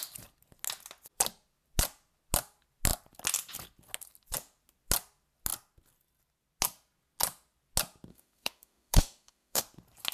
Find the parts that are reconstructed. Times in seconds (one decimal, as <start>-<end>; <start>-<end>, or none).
8.1-9.6